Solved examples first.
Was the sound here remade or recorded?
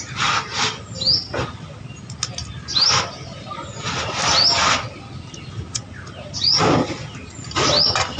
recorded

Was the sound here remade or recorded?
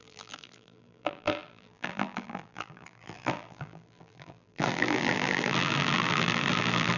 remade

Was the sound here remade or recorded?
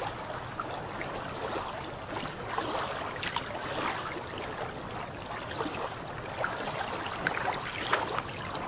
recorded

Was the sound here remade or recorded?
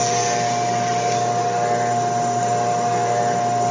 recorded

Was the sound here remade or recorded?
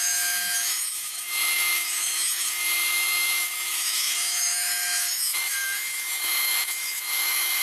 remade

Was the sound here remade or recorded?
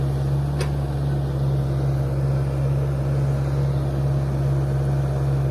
recorded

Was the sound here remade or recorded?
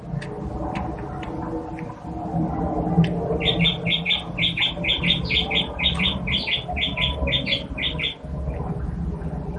recorded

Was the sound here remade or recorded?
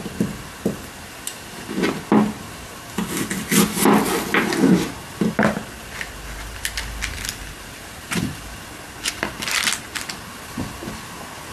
recorded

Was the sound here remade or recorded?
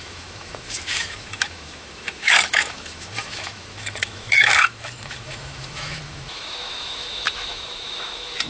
remade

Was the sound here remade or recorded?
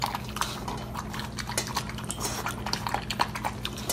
recorded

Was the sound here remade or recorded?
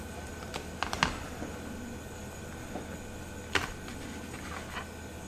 recorded